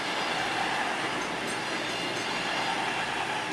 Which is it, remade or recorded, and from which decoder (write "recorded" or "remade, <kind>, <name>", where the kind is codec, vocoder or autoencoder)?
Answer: recorded